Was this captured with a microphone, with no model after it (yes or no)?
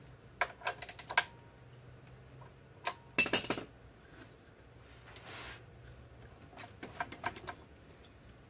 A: yes